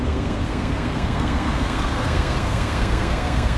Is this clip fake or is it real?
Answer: fake